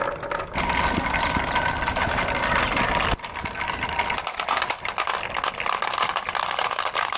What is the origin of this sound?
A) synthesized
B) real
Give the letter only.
B